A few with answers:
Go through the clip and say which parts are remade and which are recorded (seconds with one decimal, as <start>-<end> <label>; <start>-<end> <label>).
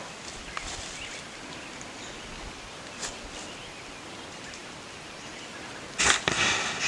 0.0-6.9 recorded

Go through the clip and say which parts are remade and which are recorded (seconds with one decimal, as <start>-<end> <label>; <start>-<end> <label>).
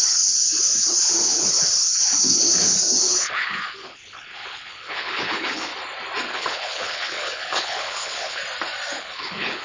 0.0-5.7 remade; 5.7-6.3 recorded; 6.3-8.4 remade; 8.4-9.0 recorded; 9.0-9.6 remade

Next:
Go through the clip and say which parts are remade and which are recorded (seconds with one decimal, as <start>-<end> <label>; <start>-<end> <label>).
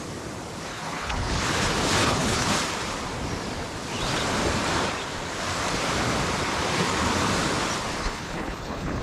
0.0-0.7 recorded; 0.7-1.4 remade; 1.4-2.0 recorded; 2.0-2.5 remade; 2.5-8.0 recorded; 8.0-9.0 remade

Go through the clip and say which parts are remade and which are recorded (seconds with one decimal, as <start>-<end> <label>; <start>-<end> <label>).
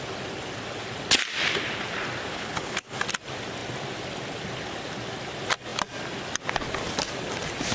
0.0-2.3 recorded; 2.3-3.0 remade; 3.0-7.7 recorded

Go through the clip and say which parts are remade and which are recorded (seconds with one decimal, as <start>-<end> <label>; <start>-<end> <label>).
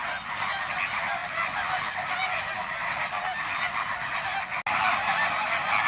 0.0-5.9 recorded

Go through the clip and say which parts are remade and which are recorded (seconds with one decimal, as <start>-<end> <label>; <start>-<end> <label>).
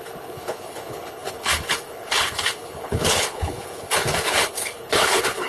0.0-5.5 remade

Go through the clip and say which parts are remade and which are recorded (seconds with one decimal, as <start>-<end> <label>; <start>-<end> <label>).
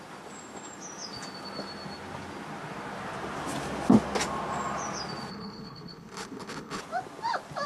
0.0-5.3 recorded; 5.3-6.8 remade; 6.8-7.7 recorded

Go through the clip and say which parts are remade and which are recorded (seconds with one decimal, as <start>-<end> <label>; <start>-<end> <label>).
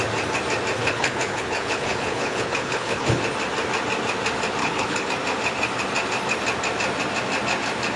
0.0-0.8 recorded; 0.8-3.2 remade; 3.2-4.6 recorded; 4.6-5.1 remade; 5.1-8.0 recorded